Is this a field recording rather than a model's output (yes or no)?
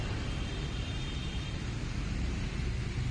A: no